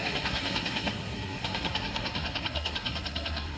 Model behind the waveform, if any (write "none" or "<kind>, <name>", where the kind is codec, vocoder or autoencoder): codec, SNAC